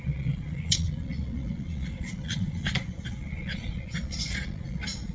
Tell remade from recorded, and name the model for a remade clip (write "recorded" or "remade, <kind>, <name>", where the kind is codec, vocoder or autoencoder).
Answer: remade, vocoder, Vocos